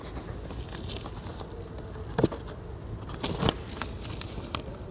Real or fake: real